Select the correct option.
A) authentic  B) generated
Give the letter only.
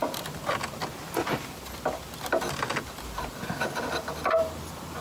A